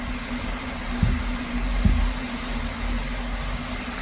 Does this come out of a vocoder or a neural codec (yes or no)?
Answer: no